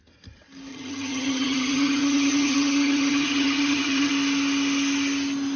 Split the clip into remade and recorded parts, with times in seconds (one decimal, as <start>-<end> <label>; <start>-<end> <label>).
0.0-0.7 recorded; 0.7-4.1 remade; 4.1-5.6 recorded